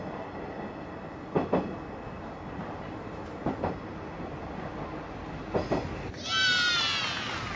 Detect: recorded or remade recorded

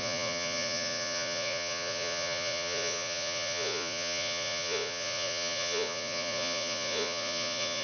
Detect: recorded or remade remade